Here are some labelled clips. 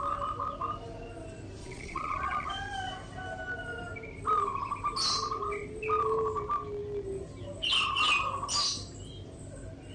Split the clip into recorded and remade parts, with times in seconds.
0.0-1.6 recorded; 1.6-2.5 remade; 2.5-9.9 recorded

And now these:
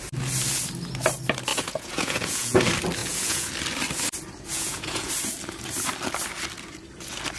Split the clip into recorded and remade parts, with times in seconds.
0.0-1.5 recorded; 1.5-2.6 remade; 2.6-3.0 recorded; 3.0-3.5 remade; 3.5-4.5 recorded; 4.5-5.1 remade; 5.1-7.4 recorded